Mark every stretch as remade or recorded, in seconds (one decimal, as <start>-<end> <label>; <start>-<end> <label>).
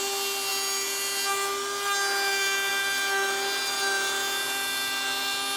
0.0-5.6 recorded